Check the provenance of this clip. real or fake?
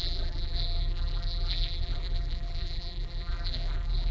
fake